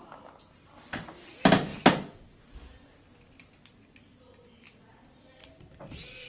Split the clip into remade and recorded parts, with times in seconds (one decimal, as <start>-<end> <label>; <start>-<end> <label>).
0.0-6.3 recorded